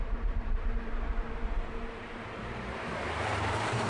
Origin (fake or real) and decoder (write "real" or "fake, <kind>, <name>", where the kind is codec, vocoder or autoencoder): fake, vocoder, BigVGAN v2